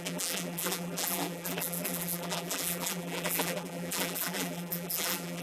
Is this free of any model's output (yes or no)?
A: no